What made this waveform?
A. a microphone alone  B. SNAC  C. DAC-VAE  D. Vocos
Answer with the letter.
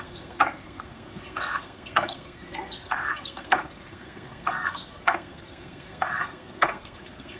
B